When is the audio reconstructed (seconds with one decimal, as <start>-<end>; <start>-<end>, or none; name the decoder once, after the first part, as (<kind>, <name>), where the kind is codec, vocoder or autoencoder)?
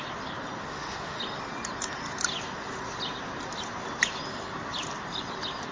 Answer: 0.7-1.2 (autoencoder, DAC-VAE)